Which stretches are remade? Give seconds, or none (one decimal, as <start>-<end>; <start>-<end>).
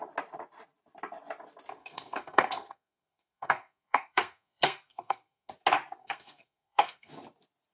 1.8-5.5; 6.0-7.1